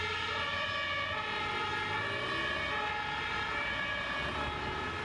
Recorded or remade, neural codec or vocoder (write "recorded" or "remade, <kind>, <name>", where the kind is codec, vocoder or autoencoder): recorded